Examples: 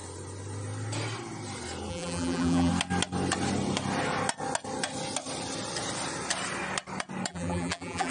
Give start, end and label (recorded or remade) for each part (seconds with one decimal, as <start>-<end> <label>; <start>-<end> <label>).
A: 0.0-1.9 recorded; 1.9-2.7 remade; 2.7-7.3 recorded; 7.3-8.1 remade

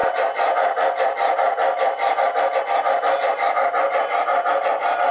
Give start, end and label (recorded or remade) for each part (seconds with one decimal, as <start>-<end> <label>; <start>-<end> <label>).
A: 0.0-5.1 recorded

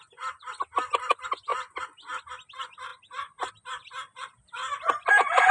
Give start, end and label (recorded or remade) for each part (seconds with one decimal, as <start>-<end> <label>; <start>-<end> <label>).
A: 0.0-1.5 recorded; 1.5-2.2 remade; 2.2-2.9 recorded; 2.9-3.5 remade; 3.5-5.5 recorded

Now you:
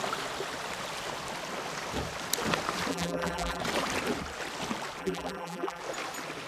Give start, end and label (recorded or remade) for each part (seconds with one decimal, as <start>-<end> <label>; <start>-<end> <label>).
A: 0.0-2.9 recorded; 2.9-3.6 remade; 3.6-5.0 recorded; 5.0-5.8 remade; 5.8-6.5 recorded

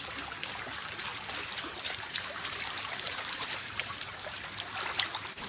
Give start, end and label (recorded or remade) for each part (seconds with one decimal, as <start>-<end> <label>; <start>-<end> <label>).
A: 0.0-1.1 recorded; 1.1-4.4 remade; 4.4-5.5 recorded

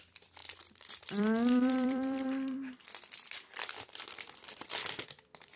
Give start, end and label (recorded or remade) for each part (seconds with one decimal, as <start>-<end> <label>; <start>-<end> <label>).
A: 0.0-0.4 recorded; 0.4-3.8 remade; 3.8-5.6 recorded